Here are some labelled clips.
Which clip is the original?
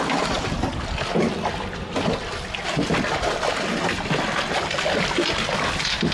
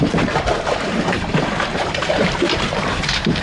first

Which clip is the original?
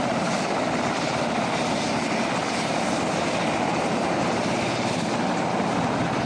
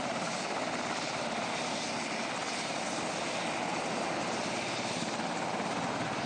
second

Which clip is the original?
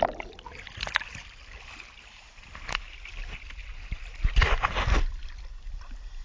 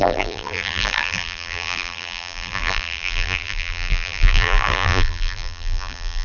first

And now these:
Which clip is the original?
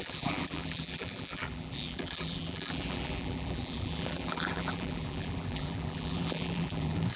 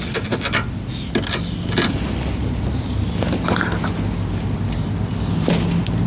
second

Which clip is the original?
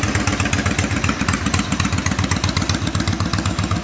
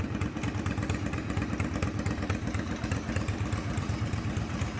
first